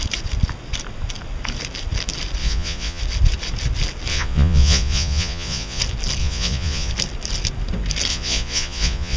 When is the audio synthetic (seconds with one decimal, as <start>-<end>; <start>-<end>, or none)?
2.4-3.0; 4.1-5.8; 6.2-6.9; 8.1-9.2